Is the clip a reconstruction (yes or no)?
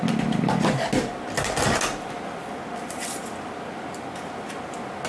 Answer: no